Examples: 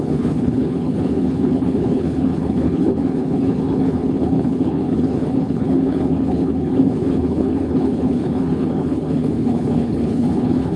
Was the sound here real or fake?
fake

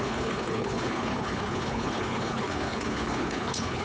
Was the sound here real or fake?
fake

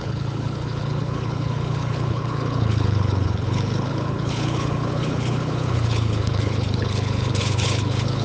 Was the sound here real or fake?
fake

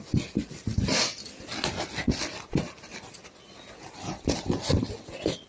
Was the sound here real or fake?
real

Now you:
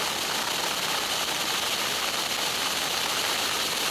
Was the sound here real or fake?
real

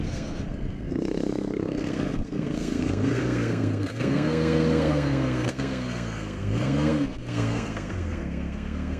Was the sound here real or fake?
fake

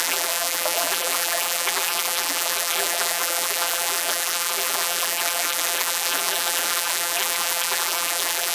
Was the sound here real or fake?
fake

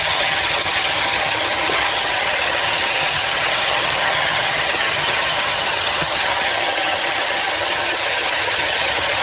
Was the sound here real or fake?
fake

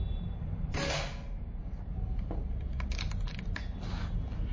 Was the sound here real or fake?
real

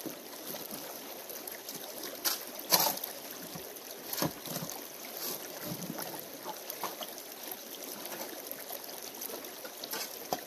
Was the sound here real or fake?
real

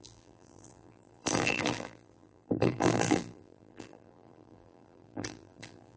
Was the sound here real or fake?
fake